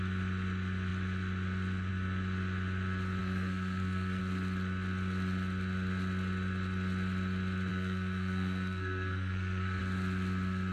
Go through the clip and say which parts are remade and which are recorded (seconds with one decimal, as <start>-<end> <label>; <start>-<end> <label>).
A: 0.0-3.2 recorded; 3.2-4.2 remade; 4.2-7.7 recorded; 7.7-9.8 remade; 9.8-10.7 recorded